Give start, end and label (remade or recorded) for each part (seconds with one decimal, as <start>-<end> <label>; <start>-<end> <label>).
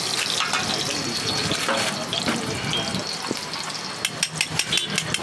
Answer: 0.0-5.2 recorded